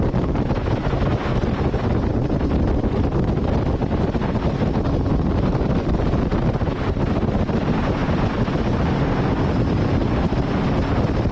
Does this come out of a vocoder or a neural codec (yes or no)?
no